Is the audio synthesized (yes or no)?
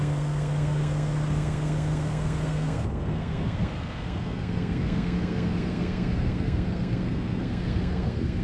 yes